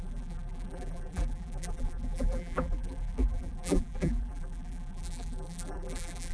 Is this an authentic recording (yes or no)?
no